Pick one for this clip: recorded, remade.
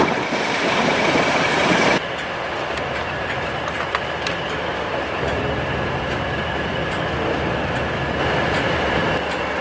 remade